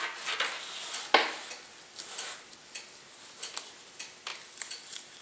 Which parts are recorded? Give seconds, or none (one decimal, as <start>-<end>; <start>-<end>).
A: 0.0-5.2

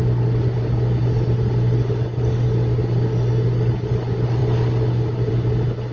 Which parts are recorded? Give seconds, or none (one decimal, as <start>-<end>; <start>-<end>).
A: 0.0-5.9

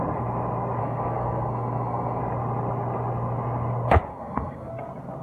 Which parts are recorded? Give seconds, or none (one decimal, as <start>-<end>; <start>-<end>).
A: 0.0-0.8; 2.2-4.1; 4.7-5.2

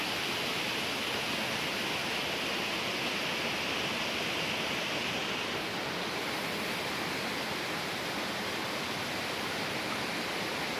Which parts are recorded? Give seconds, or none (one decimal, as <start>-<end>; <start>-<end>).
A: 0.0-10.8

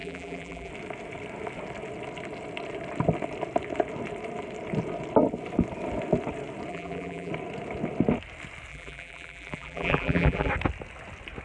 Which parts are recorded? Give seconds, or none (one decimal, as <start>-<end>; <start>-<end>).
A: 0.7-6.7; 7.3-8.7; 10.5-11.4

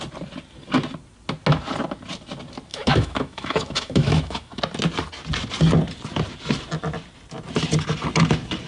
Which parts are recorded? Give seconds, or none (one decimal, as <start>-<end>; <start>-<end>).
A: 0.0-2.7; 4.6-8.7

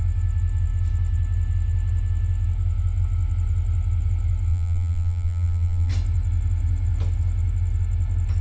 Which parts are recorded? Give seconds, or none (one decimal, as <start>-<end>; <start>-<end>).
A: 0.0-4.5; 5.9-8.4

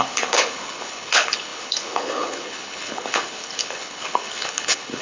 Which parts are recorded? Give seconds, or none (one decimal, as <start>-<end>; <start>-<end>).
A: none